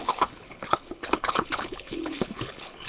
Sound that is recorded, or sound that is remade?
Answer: remade